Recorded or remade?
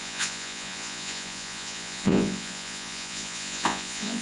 remade